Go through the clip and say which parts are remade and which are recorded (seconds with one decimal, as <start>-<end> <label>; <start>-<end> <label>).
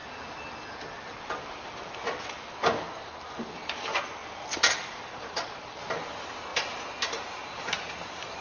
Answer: 0.0-8.4 recorded